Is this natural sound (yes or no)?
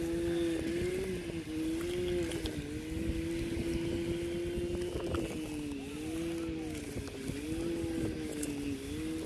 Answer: yes